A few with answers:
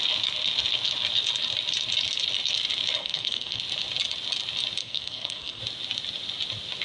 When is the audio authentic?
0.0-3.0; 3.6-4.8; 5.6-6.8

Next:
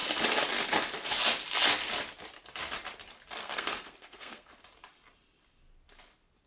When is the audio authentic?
0.0-3.4; 4.5-6.5

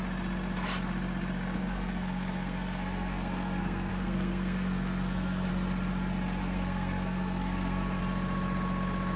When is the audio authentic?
0.0-1.6; 5.5-6.4; 8.0-9.2

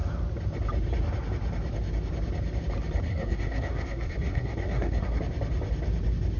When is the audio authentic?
0.0-3.1; 5.2-6.4

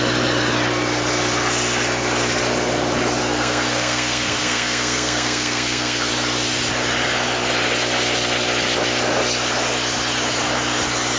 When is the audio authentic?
0.0-3.2; 6.1-11.2